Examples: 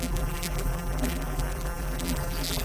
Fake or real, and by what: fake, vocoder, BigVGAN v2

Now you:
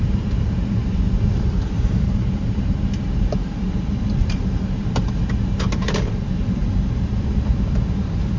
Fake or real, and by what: fake, vocoder, BigVGAN v2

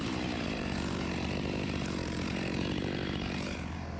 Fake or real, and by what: fake, vocoder, BigVGAN v2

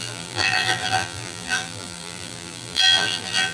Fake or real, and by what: fake, vocoder, BigVGAN v2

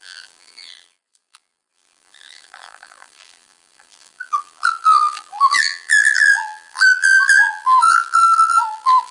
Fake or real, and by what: fake, vocoder, BigVGAN v2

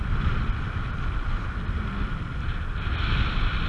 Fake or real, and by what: fake, vocoder, BigVGAN v2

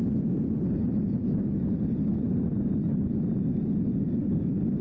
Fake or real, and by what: real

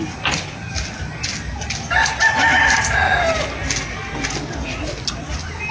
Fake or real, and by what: real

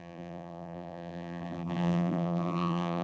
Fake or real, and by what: fake, vocoder, BigVGAN v2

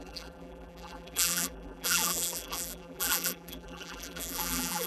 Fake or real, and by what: fake, vocoder, BigVGAN v2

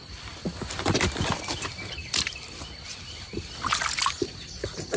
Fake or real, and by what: real